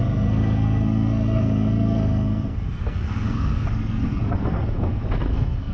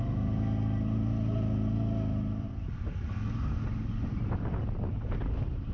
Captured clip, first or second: second